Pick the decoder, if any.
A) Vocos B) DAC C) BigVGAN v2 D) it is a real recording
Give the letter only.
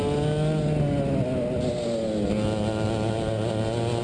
D